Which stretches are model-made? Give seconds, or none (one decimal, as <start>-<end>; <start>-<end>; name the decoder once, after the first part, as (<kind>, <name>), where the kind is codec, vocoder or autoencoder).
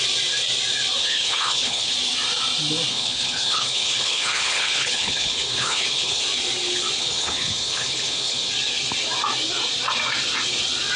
1.0-1.9 (codec, HILCodec); 2.9-6.2; 7.0-8.5